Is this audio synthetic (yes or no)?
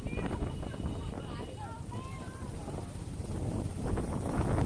no